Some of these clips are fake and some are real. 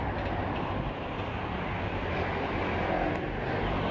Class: fake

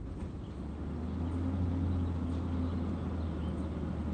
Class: real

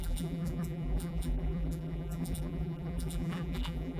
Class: fake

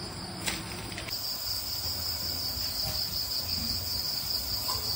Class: real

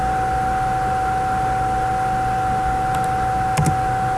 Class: real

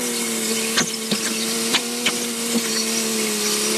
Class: fake